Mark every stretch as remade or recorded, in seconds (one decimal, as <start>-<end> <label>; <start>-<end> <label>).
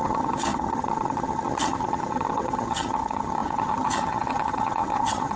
0.0-5.4 remade